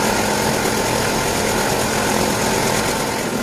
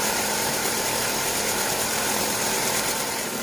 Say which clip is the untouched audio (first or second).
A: first